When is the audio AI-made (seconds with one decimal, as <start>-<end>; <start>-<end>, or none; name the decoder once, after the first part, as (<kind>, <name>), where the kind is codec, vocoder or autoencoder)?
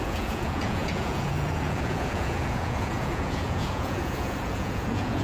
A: 0.0-5.2 (vocoder, Vocos)